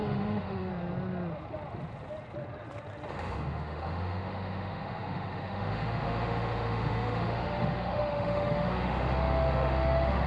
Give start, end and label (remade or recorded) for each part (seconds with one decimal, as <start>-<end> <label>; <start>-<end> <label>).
0.0-0.7 remade; 0.7-3.1 recorded; 3.1-10.3 remade